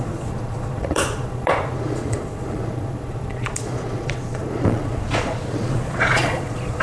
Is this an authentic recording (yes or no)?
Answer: no